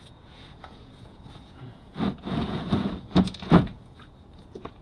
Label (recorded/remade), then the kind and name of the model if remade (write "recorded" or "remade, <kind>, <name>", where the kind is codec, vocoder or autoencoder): remade, vocoder, Vocos